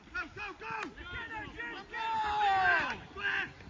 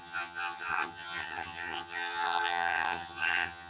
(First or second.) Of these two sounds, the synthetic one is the second